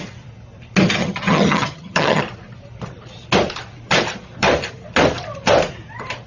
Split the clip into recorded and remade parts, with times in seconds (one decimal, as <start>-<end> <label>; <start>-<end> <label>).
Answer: 0.0-1.0 recorded; 1.0-2.2 remade; 2.2-6.3 recorded